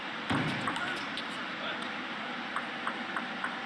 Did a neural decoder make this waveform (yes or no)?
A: no